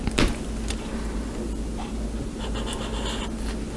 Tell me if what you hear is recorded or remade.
recorded